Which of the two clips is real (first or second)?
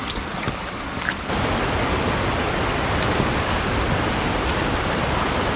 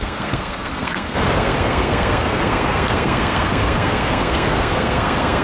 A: first